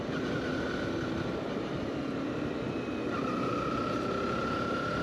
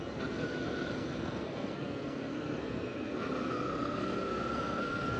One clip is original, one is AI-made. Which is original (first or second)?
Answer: first